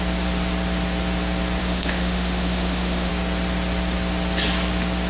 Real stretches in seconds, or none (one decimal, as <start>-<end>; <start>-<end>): 0.0-1.6; 3.1-5.1